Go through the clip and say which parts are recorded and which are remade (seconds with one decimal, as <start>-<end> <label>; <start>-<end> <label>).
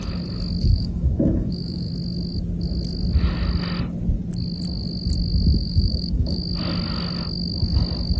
0.0-0.6 recorded; 0.6-1.9 remade; 1.9-5.6 recorded; 5.6-6.4 remade; 6.4-8.2 recorded